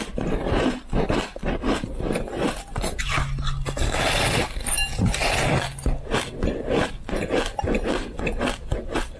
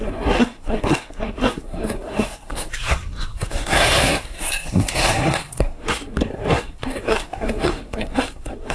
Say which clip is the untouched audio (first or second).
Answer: first